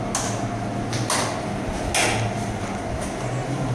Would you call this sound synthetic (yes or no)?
no